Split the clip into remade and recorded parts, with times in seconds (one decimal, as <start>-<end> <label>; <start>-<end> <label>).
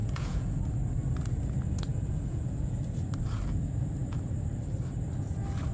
0.0-0.7 remade; 0.7-1.9 recorded; 1.9-2.8 remade; 2.8-5.7 recorded